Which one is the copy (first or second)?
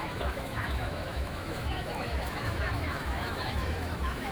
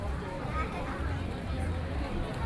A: first